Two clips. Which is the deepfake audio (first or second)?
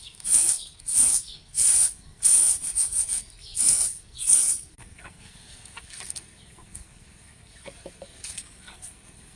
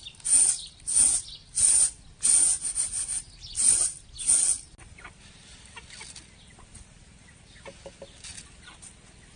first